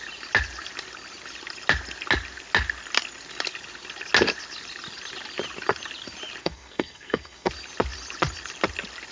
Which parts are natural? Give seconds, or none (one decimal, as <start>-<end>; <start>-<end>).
0.0-6.4; 7.5-9.1